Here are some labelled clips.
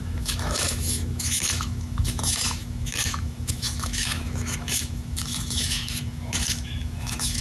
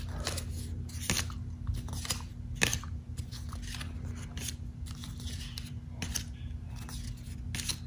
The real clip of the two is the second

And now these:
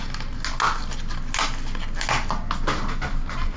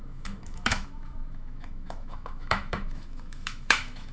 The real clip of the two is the first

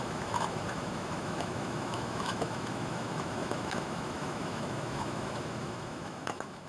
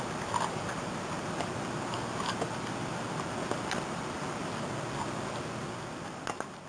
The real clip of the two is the second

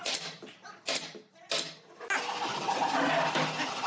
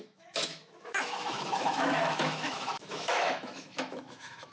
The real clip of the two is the first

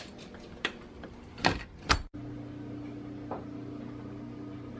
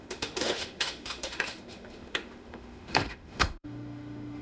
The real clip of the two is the first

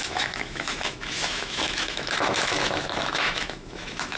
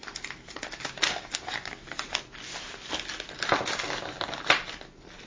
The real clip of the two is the second